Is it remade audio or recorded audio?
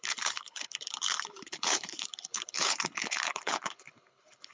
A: remade